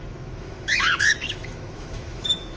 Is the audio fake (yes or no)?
yes